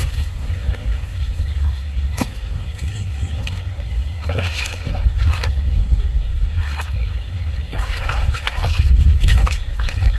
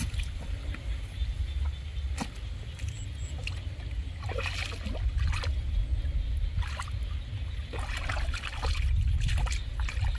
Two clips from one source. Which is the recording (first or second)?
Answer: second